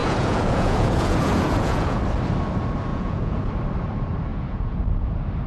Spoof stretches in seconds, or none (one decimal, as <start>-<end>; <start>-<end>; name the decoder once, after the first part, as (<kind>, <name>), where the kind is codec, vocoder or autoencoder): 0.0-2.0 (vocoder, Vocos); 2.9-3.5; 4.3-5.1